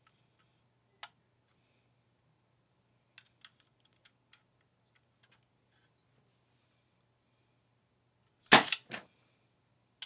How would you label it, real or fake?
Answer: real